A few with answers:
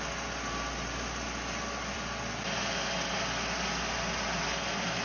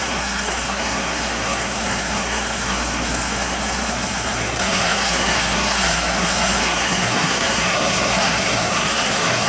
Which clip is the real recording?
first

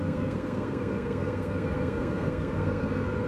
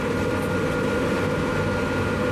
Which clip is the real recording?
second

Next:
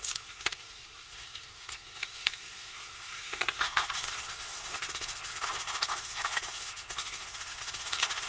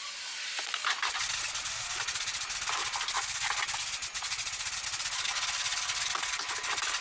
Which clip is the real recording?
second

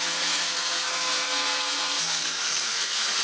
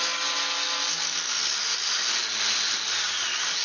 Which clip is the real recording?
second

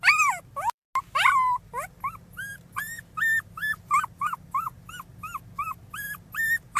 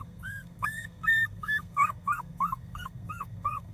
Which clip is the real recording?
first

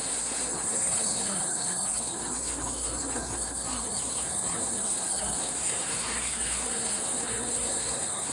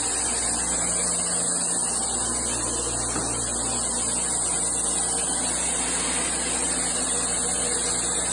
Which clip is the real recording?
second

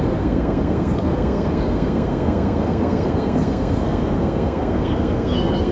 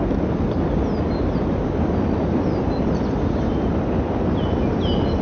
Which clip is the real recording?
second